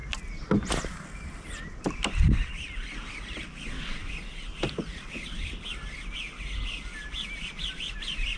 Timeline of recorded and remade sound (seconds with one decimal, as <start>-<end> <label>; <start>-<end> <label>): 0.0-8.4 recorded

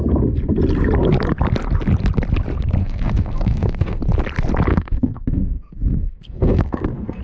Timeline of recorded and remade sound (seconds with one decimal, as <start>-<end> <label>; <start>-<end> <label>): 0.0-2.8 recorded; 2.8-4.0 remade; 4.0-4.7 recorded; 4.7-7.2 remade

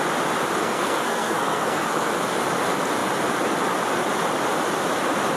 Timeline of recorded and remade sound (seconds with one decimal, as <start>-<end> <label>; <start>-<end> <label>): 0.0-0.6 recorded; 0.6-2.1 remade; 2.1-5.4 recorded